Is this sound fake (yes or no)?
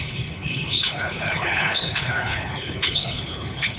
yes